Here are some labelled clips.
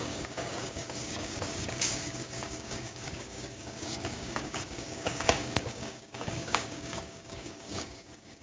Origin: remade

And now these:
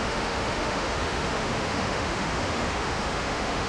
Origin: remade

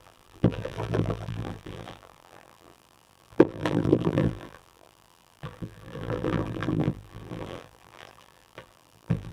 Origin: remade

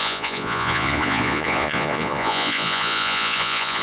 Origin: remade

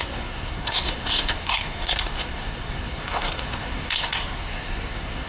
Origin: remade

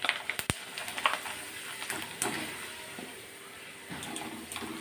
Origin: recorded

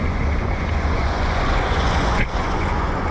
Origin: remade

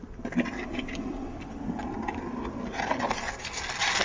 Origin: recorded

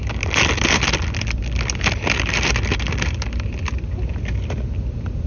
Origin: recorded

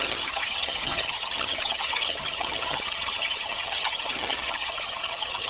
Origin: remade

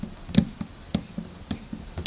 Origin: recorded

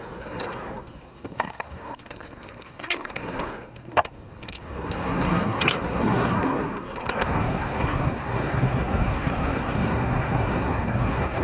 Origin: remade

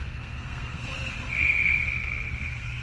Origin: remade